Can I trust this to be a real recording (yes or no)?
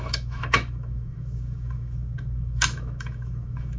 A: no